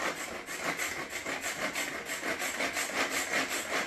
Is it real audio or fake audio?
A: real